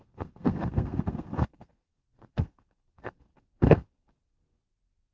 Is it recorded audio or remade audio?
remade